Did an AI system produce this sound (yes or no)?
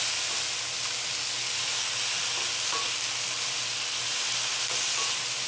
no